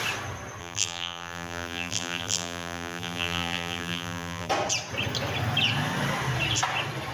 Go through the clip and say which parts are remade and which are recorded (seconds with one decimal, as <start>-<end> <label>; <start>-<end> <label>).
0.0-0.6 recorded; 0.6-4.5 remade; 4.5-7.1 recorded